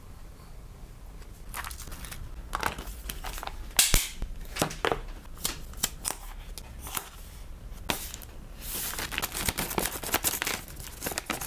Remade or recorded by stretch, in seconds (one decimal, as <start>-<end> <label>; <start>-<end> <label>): 0.0-11.5 recorded